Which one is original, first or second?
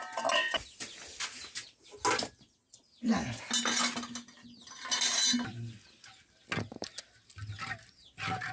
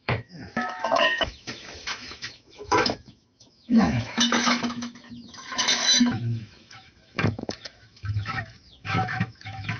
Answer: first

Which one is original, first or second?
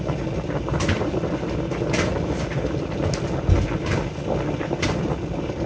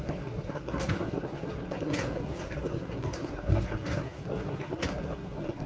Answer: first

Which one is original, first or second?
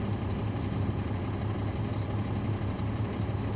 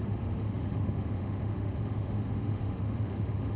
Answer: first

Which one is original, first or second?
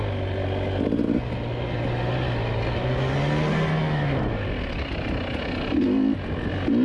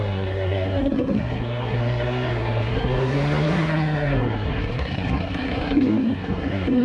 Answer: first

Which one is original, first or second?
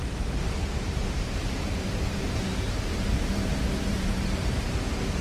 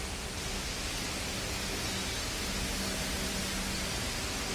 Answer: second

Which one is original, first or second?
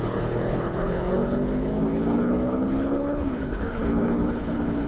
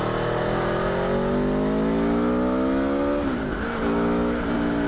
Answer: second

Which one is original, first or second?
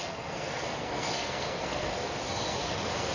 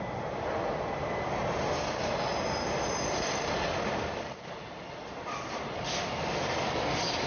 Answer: second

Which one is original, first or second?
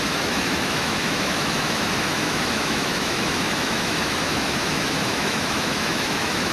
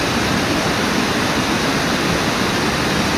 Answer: second